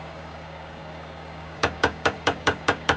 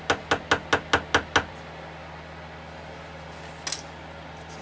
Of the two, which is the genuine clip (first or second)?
second